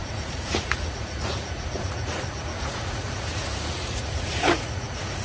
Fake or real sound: fake